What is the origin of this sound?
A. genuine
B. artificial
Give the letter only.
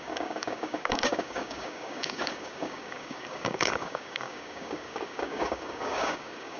B